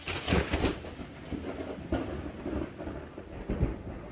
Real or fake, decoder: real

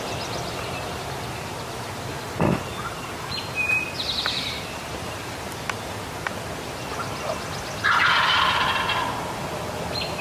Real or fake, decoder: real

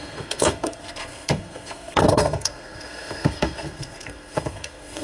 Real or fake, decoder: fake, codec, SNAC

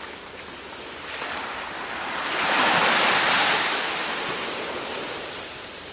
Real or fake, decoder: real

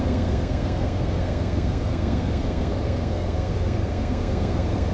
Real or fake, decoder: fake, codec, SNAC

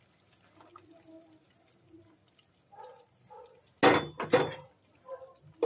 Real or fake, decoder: real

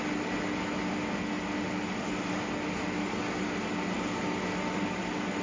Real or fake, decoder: real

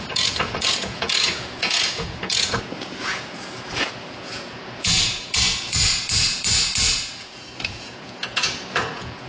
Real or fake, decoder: fake, vocoder, Vocos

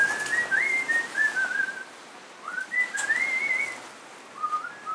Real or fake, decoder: real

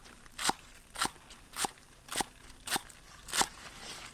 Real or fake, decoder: real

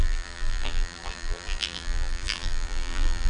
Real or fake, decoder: fake, vocoder, BigVGAN v2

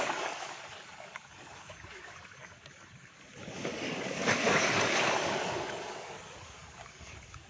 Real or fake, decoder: fake, codec, DAC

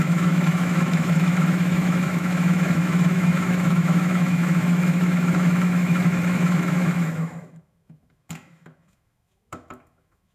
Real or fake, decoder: fake, autoencoder, DAC-VAE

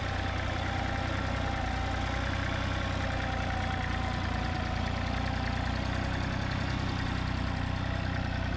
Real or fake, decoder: real